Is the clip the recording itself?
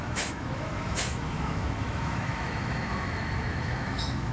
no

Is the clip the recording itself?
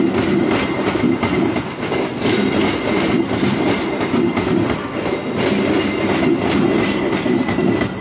yes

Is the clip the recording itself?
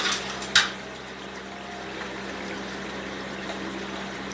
yes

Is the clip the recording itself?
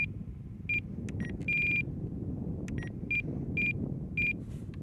yes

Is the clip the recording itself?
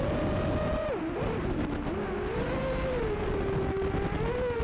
yes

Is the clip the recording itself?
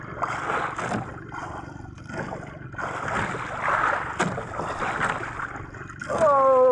yes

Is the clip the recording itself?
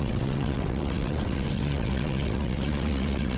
no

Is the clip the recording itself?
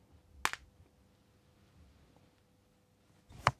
yes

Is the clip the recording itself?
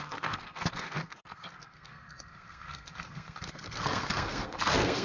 no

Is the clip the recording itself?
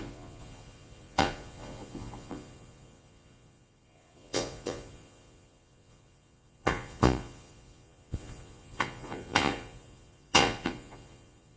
no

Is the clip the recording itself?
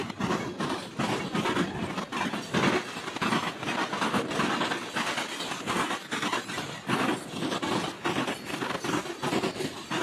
yes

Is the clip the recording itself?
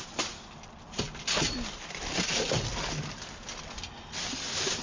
yes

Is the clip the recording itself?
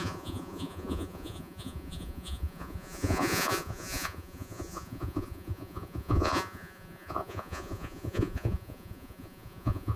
no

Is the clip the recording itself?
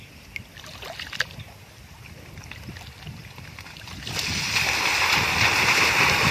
yes